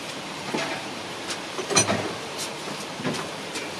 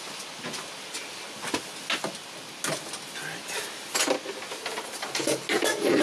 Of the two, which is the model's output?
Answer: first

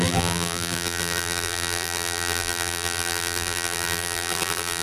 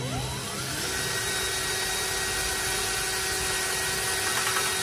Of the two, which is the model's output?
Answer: first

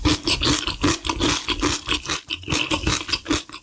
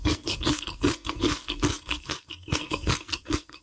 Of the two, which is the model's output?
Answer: second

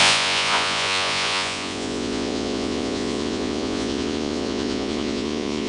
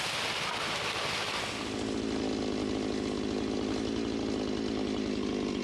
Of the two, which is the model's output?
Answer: first